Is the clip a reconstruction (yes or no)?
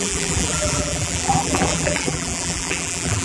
yes